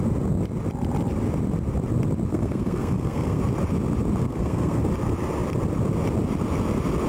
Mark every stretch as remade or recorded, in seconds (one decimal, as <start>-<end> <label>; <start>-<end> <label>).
0.0-2.3 recorded; 2.3-3.4 remade; 3.4-4.2 recorded; 4.2-4.8 remade; 4.8-7.1 recorded